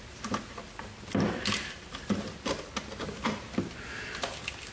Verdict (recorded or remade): recorded